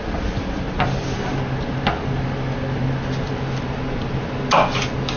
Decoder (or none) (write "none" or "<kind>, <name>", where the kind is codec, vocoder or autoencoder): none